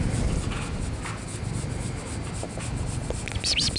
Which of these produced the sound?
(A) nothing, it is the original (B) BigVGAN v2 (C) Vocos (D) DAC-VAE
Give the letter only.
A